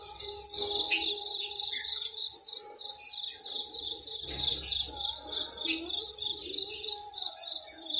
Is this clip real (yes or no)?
yes